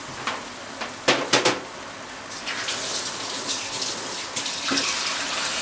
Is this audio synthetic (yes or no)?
no